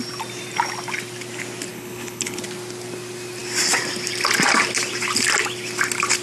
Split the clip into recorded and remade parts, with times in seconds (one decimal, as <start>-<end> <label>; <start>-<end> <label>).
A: 0.0-1.7 recorded; 1.7-2.4 remade; 2.4-6.2 recorded